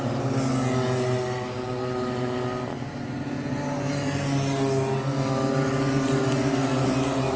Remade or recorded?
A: recorded